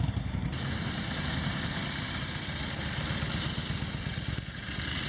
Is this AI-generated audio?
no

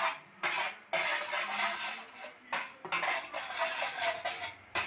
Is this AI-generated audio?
no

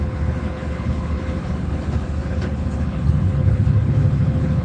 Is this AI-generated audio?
yes